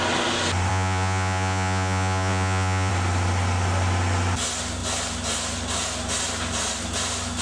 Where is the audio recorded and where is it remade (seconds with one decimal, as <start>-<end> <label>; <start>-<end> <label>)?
0.0-0.7 recorded; 0.7-2.9 remade; 2.9-7.4 recorded